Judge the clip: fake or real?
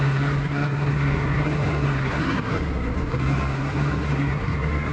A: fake